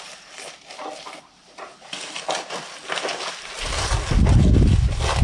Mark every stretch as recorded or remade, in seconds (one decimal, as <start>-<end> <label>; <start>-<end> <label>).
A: 0.0-5.2 recorded